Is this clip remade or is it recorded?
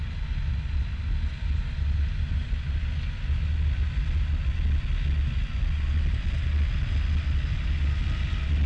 recorded